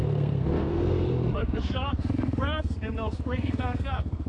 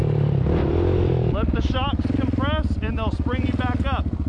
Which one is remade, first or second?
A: first